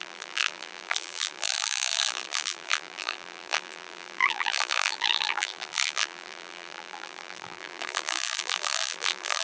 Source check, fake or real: fake